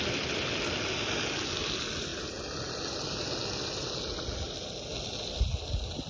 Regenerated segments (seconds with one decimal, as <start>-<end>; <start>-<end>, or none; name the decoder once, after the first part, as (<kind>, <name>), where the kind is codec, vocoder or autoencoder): none